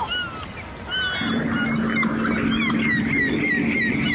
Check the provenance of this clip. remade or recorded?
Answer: recorded